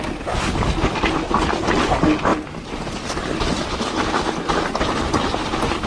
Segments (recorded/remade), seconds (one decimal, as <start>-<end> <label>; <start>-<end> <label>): 0.0-5.9 recorded